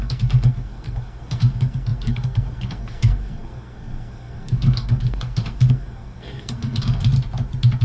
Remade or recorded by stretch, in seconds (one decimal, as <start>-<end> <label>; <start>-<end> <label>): 0.0-7.1 remade; 7.1-7.8 recorded

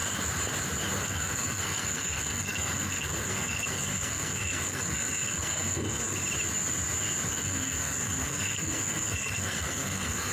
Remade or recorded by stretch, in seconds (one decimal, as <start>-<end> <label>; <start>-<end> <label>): 0.0-1.0 recorded; 1.0-6.2 remade; 6.2-7.3 recorded; 7.3-10.3 remade

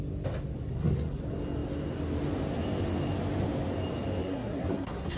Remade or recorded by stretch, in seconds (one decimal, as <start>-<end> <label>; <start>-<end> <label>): 0.0-0.7 recorded; 0.7-1.2 remade; 1.2-4.2 recorded; 4.2-5.2 remade

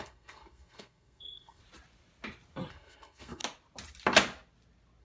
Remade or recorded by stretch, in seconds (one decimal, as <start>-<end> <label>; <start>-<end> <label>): 0.0-1.6 remade; 1.6-2.7 recorded; 2.7-3.4 remade; 3.4-5.0 recorded